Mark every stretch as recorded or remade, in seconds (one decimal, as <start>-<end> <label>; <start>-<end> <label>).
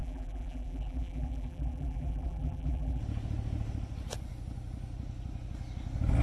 0.0-3.0 remade; 3.0-6.2 recorded